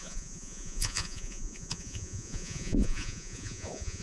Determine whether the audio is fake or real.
fake